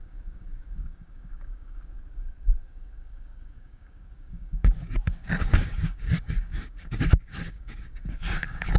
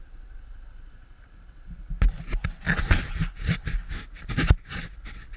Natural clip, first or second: second